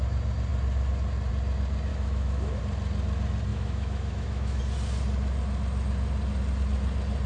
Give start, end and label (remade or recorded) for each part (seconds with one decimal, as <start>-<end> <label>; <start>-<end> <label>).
0.0-1.9 recorded; 1.9-2.6 remade; 2.6-3.5 recorded; 3.5-4.6 remade; 4.6-7.3 recorded